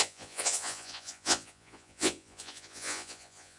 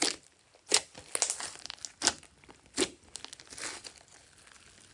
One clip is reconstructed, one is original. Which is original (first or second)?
second